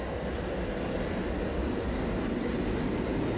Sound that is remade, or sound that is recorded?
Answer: recorded